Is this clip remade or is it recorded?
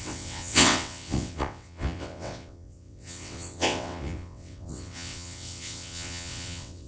remade